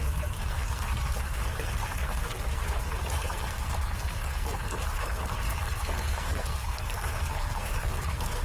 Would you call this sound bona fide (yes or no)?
no